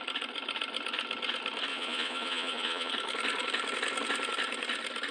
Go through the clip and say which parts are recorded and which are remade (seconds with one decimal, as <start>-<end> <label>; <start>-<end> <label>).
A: 0.0-1.7 recorded; 1.7-2.9 remade; 2.9-5.1 recorded